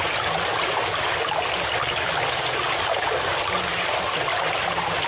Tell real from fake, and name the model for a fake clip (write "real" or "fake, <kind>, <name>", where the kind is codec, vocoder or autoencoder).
real